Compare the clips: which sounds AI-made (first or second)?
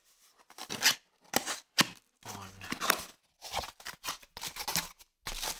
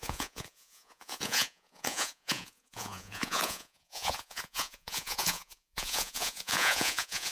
second